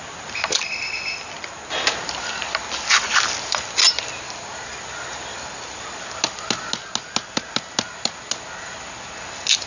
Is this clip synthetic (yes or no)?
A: no